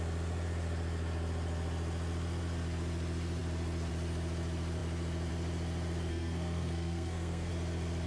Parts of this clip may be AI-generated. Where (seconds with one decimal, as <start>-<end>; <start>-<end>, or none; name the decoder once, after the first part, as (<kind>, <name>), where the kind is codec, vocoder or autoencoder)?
6.1-7.5 (codec, SNAC)